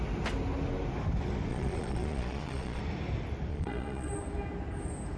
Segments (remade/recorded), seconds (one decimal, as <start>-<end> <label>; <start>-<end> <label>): 0.0-1.5 recorded; 1.5-2.8 remade; 2.8-3.5 recorded; 3.5-4.1 remade; 4.1-5.2 recorded